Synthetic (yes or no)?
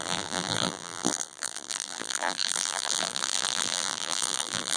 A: yes